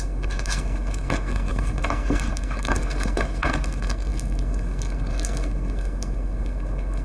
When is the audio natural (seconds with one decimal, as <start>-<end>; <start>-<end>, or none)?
none